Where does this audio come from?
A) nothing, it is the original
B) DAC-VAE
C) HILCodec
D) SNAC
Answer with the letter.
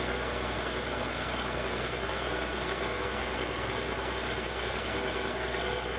D